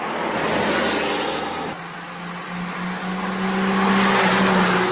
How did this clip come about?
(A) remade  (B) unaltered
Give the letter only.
B